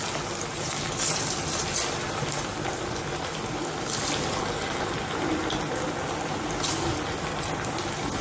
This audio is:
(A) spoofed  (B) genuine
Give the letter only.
B